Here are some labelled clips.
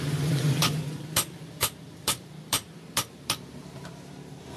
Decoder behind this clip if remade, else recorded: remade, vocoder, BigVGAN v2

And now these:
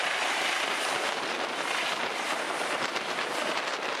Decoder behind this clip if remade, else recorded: remade, vocoder, BigVGAN v2